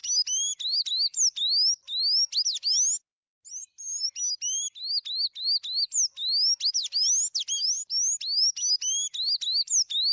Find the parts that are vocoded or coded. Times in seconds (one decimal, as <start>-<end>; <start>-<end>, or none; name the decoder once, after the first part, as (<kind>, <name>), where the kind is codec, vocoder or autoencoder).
3.6-4.1 (vocoder, BigVGAN v2)